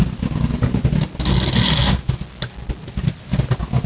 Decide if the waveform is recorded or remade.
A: recorded